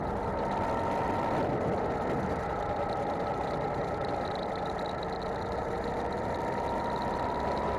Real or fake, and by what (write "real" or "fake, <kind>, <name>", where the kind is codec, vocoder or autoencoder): real